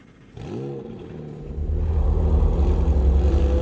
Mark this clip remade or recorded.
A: recorded